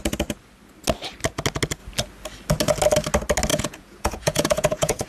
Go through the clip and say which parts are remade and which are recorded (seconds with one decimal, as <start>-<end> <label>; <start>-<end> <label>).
0.0-3.5 recorded; 3.5-5.1 remade